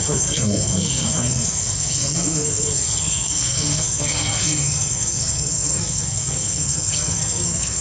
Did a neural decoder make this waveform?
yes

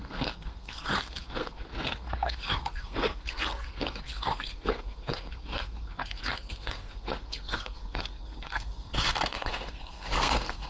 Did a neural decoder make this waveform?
yes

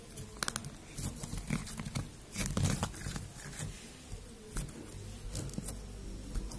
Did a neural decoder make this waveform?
no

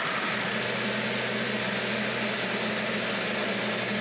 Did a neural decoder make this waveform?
no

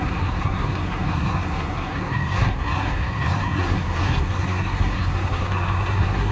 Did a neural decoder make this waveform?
yes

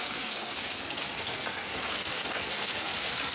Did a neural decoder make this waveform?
yes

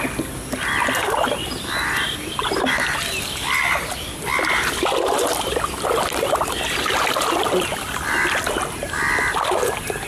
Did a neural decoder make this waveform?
no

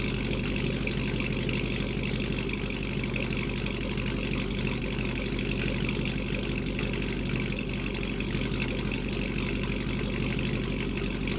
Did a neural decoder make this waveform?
no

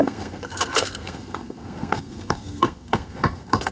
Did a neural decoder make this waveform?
yes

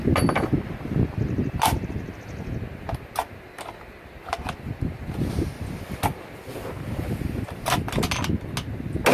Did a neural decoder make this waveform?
no